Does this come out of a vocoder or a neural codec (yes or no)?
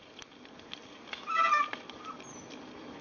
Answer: no